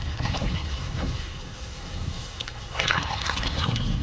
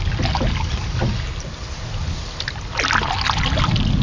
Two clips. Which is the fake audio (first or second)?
first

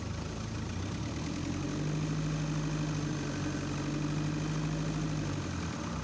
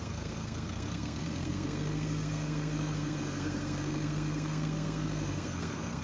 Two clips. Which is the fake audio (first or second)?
second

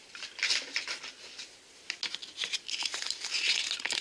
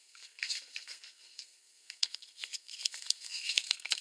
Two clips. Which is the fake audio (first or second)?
second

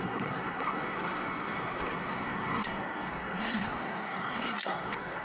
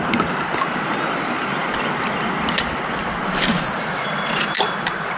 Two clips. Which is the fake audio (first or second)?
first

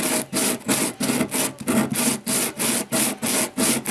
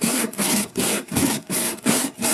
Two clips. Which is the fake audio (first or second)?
second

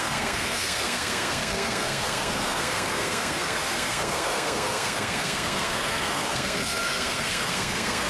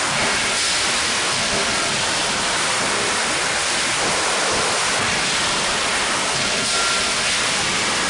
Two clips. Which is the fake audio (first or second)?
first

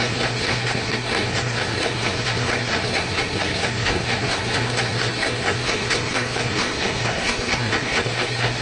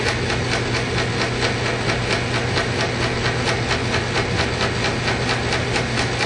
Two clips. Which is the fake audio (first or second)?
first